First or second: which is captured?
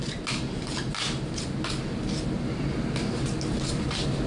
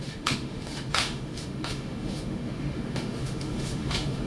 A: first